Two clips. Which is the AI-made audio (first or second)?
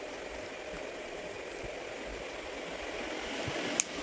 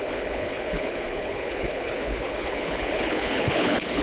second